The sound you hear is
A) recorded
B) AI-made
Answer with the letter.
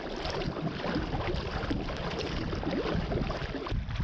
A